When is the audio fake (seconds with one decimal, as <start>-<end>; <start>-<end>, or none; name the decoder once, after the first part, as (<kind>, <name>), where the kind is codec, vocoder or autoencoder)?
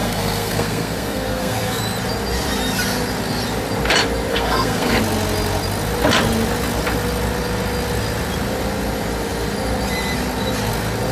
0.0-1.8 (codec, SNAC); 4.3-5.0